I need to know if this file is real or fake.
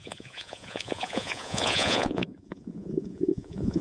fake